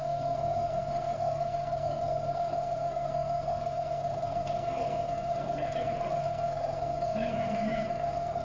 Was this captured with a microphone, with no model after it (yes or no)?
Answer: no